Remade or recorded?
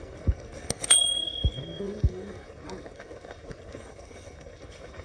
remade